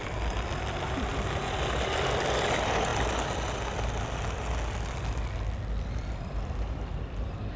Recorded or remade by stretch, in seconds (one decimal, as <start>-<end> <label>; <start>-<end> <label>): 0.0-7.6 recorded